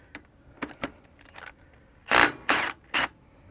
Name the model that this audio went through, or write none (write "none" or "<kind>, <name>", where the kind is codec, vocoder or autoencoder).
none